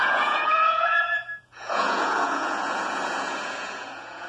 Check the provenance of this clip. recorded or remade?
remade